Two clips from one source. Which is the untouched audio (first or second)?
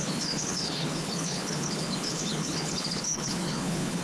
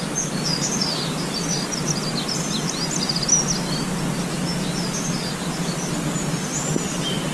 second